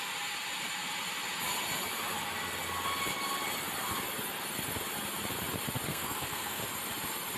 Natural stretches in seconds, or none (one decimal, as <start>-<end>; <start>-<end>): 0.0-5.9; 6.6-7.4